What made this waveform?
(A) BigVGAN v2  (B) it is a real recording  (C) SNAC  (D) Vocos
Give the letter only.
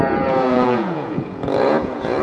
D